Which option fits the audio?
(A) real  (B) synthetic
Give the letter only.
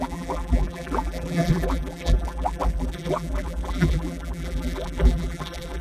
B